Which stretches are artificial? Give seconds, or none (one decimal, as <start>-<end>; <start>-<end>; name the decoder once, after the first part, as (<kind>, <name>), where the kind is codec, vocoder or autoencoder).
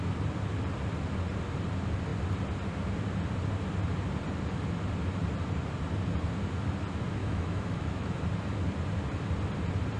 7.2-8.1 (autoencoder, DAC-VAE)